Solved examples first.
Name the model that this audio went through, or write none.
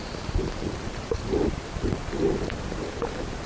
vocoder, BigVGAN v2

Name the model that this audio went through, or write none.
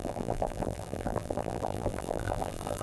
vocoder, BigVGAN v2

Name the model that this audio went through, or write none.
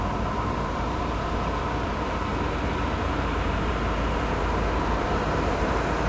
vocoder, BigVGAN v2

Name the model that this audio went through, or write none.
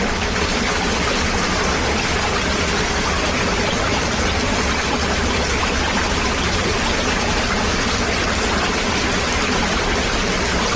none